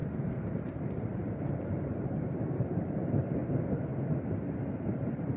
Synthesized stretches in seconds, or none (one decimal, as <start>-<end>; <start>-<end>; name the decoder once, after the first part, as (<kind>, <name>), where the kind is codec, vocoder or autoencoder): 0.0-3.4 (vocoder, BigVGAN v2); 4.8-5.4